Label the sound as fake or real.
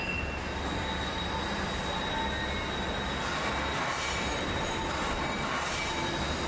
real